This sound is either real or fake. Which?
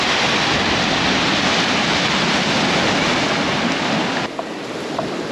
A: real